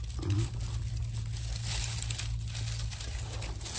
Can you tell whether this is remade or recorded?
recorded